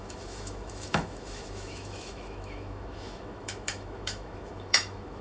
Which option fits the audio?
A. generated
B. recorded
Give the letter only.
A